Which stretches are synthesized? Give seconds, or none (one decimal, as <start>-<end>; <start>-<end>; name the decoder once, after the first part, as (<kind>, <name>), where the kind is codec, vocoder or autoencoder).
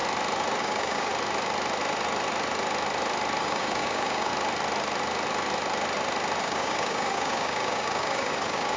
0.6-1.1 (codec, DAC); 3.4-4.3; 6.4-8.8